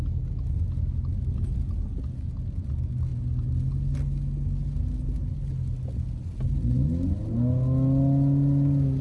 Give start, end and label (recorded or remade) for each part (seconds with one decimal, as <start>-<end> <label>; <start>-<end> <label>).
0.0-9.0 recorded

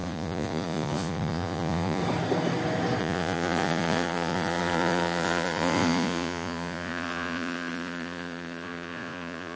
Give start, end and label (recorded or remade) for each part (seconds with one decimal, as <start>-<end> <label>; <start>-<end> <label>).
0.0-2.0 remade; 2.0-3.0 recorded; 3.0-9.6 remade

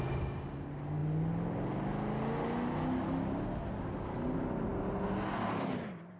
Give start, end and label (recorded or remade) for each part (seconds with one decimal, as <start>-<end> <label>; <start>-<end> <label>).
0.0-6.2 recorded

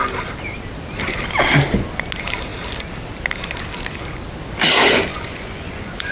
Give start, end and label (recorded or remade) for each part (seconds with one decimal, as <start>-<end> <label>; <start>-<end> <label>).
0.0-5.1 recorded; 5.1-6.1 remade

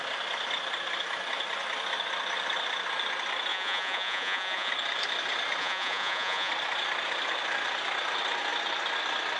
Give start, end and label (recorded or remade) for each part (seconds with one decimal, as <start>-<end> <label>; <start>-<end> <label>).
0.0-3.5 recorded; 3.5-4.7 remade; 4.7-5.6 recorded; 5.6-6.5 remade; 6.5-9.4 recorded

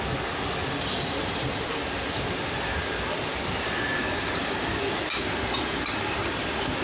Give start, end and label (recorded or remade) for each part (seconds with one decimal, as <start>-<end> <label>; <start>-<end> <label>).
0.0-6.8 recorded

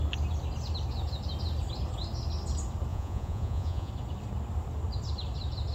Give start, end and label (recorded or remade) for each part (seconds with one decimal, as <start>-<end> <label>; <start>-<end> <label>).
0.0-2.9 recorded; 2.9-3.9 remade; 3.9-5.7 recorded

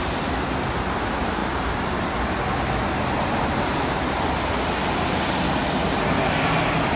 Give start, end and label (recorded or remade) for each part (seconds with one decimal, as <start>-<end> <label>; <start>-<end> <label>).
0.0-7.0 recorded